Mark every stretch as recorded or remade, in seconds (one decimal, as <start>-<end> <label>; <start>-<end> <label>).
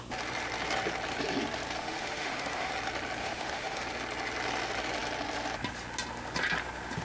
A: 0.0-1.8 recorded; 1.8-2.7 remade; 2.7-3.2 recorded; 3.2-3.8 remade; 3.8-7.0 recorded